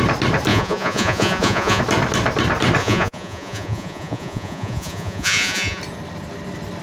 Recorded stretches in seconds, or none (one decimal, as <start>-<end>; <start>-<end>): 0.0-0.5; 1.8-2.8; 5.8-6.8